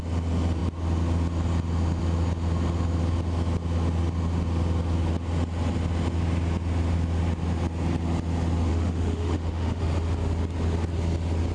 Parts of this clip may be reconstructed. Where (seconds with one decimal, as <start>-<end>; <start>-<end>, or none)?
8.7-9.8